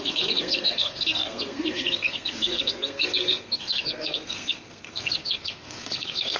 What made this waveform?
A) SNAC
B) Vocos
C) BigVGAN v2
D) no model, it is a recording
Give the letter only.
A